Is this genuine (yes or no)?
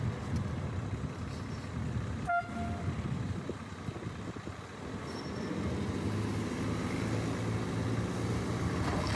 yes